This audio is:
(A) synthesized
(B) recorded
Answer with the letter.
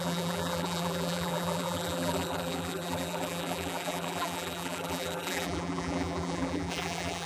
A